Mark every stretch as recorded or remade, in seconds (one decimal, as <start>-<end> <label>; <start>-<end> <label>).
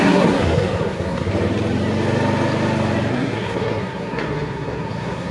0.0-1.3 remade; 1.3-3.1 recorded; 3.1-5.3 remade